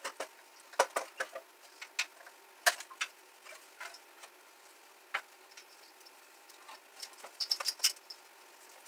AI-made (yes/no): no